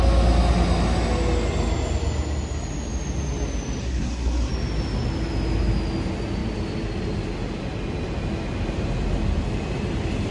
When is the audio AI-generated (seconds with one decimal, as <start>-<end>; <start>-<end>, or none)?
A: 3.8-4.5